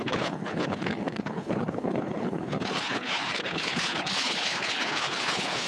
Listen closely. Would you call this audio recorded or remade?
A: remade